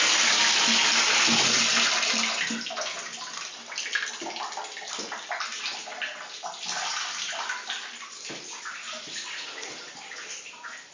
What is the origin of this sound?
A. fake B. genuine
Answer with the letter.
B